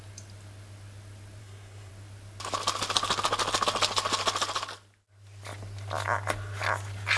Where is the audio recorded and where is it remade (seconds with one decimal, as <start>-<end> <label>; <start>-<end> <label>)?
0.0-1.4 recorded; 1.4-1.9 remade; 1.9-7.2 recorded